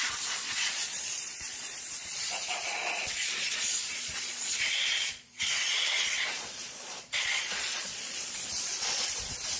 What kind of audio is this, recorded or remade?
remade